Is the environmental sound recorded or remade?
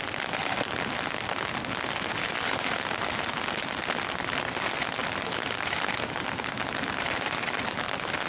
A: recorded